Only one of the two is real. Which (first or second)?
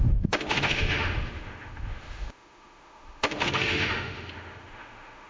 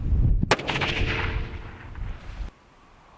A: second